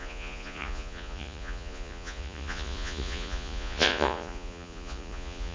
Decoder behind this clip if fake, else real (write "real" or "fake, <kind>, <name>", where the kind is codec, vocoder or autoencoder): fake, vocoder, Vocos